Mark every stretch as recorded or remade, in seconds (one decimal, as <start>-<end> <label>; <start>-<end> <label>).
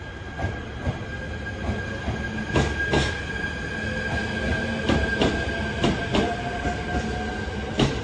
0.0-8.0 recorded